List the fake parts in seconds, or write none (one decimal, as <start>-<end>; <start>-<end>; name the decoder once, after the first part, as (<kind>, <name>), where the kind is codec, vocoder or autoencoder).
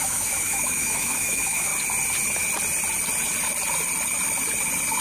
0.0-1.7 (autoencoder, DAC-VAE)